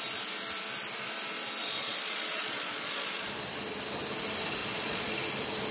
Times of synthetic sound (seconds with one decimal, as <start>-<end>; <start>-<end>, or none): 1.6-3.3; 4.6-5.1